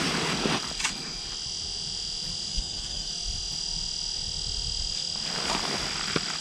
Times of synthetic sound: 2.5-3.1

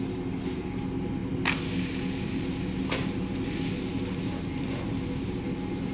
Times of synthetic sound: none